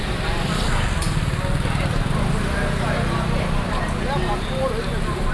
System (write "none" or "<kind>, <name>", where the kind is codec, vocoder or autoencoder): none